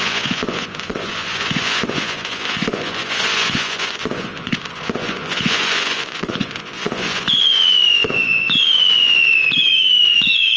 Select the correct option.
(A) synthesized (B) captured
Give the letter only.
A